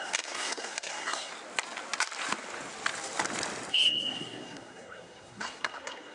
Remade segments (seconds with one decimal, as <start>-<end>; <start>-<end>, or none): 0.0-1.3; 3.7-6.1